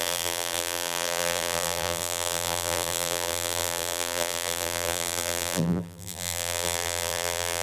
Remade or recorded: remade